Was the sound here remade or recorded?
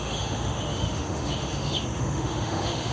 remade